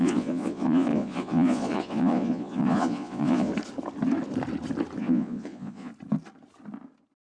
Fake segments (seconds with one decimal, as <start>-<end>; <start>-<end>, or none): 0.0-3.5; 5.0-5.9

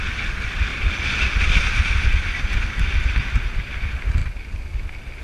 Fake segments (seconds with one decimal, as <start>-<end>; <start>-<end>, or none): 0.7-3.6

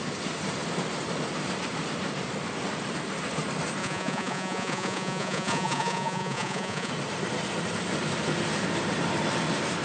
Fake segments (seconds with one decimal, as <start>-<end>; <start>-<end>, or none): 3.8-6.9

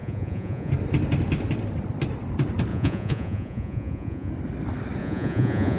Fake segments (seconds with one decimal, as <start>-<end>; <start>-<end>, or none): 0.0-0.7; 2.7-4.3; 5.0-5.8

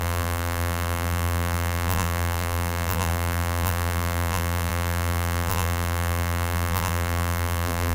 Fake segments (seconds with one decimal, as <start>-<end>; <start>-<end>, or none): 0.0-7.9

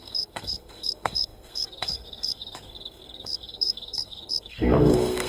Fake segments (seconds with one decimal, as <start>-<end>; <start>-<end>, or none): 0.0-5.3

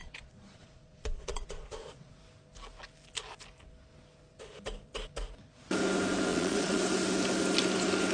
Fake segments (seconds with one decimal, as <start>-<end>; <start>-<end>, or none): 0.0-2.1; 6.3-6.8

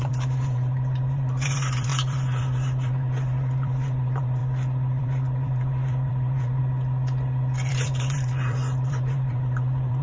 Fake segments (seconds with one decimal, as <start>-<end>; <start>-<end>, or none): 0.0-4.4; 5.0-6.6; 7.7-10.0